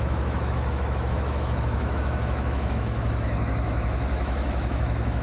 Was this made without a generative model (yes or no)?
no